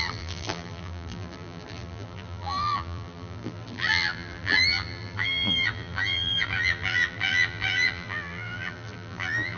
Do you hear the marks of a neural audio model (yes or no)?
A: yes